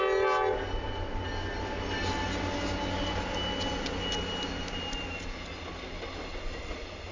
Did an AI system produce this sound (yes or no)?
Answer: no